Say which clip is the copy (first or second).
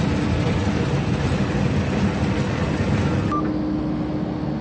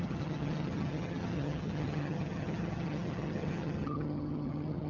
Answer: second